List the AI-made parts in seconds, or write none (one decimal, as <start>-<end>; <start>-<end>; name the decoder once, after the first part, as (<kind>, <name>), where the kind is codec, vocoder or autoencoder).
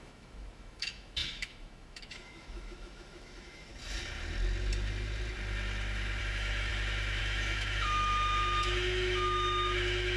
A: 0.0-3.7 (autoencoder, DAC-VAE); 6.2-6.7; 7.2-10.2